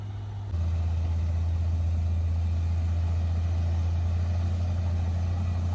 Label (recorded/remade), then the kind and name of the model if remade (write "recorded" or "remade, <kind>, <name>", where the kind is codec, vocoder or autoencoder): recorded